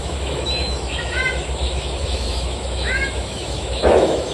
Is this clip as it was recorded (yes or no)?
no